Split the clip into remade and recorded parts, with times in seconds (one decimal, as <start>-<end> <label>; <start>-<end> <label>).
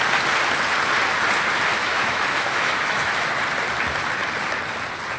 0.0-1.8 recorded; 1.8-3.3 remade; 3.3-5.2 recorded